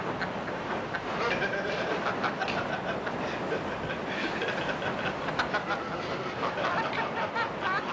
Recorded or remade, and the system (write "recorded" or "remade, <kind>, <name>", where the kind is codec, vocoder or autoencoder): recorded